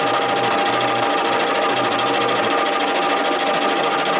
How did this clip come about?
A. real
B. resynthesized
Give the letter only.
A